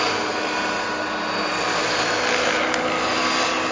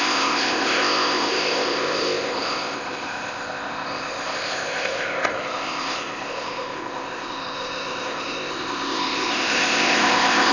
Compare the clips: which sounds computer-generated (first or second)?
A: second